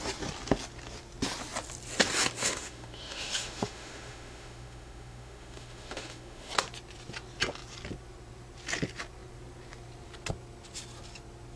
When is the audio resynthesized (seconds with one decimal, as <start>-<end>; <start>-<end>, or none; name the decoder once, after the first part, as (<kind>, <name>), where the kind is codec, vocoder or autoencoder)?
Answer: 2.4-6.5 (autoencoder, DAC-VAE)